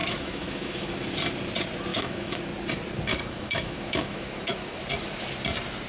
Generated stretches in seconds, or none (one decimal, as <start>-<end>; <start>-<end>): 0.0-0.9; 1.9-2.4; 3.1-4.8